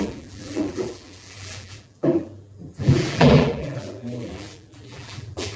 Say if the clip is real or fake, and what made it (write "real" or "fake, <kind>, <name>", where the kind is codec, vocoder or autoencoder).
fake, vocoder, BigVGAN v2